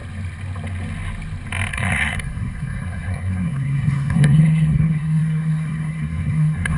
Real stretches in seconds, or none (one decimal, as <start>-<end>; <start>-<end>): 0.0-1.7